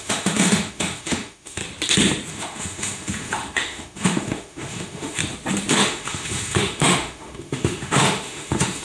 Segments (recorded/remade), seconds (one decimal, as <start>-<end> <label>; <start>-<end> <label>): 0.0-1.6 remade; 1.6-2.3 recorded; 2.3-5.2 remade; 5.2-5.7 recorded; 5.7-8.8 remade